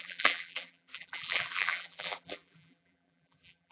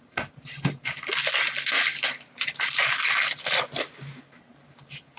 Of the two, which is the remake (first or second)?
first